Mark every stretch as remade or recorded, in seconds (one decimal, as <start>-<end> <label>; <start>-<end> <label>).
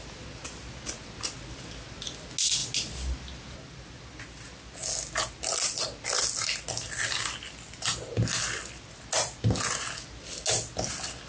0.0-11.3 recorded